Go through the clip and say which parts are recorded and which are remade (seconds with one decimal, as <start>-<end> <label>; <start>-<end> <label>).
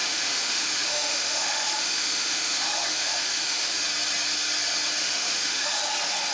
0.0-3.8 remade; 3.8-5.0 recorded; 5.0-5.8 remade; 5.8-6.3 recorded